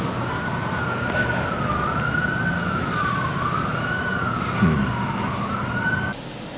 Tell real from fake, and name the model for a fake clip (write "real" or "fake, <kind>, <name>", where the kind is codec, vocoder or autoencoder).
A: real